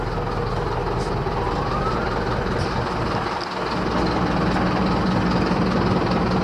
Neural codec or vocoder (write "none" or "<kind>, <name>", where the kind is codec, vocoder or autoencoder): none